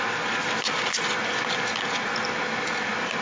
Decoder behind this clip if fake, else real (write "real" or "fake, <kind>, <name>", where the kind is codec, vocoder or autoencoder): real